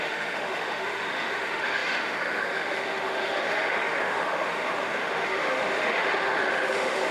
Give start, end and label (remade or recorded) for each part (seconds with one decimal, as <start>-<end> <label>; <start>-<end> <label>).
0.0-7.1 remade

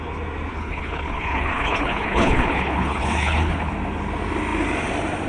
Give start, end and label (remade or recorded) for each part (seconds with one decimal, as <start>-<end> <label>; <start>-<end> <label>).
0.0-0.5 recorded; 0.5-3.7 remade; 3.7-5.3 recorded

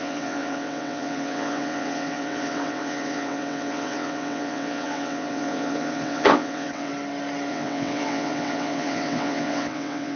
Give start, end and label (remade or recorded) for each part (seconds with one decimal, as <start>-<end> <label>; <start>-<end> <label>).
0.0-6.9 remade; 6.9-7.5 recorded; 7.5-10.2 remade

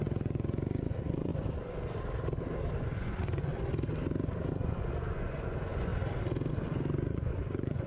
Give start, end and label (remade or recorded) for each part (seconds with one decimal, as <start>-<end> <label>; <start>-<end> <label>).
0.0-1.3 remade; 1.3-2.8 recorded; 2.8-3.5 remade; 3.5-4.5 recorded; 4.5-5.9 remade; 5.9-6.5 recorded; 6.5-7.9 remade

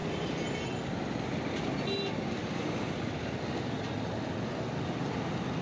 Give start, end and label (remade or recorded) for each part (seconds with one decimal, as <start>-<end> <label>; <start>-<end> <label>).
0.0-5.6 recorded

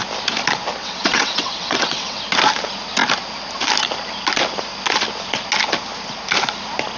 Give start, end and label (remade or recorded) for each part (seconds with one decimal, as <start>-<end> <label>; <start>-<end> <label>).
0.0-0.8 recorded; 0.8-2.2 remade; 2.2-7.0 recorded

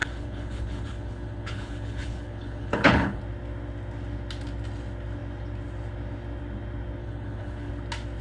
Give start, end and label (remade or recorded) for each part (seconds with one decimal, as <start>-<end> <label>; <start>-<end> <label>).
0.0-3.2 remade; 3.2-7.0 recorded; 7.0-7.7 remade; 7.7-8.2 recorded

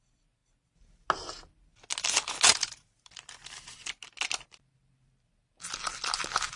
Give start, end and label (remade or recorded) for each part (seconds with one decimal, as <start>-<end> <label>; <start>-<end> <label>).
0.0-6.6 recorded